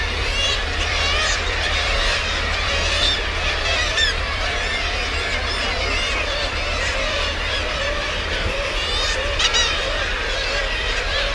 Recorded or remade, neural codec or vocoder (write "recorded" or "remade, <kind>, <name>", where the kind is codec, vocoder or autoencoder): remade, vocoder, BigVGAN v2